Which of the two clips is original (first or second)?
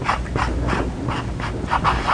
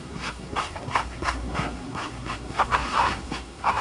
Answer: first